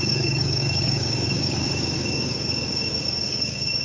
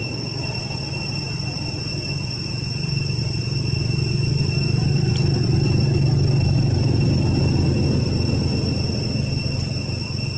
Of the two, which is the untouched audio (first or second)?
second